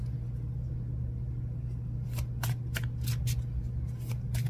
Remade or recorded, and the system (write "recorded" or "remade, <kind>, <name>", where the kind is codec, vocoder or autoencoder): recorded